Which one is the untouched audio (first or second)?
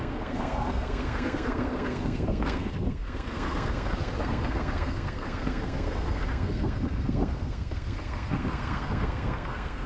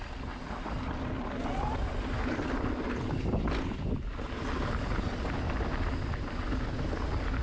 second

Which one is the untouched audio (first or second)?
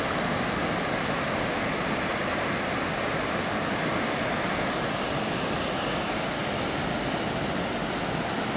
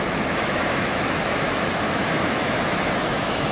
first